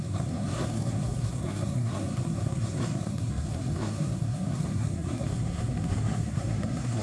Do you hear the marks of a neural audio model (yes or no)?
yes